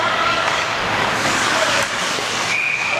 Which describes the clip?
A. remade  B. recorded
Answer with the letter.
A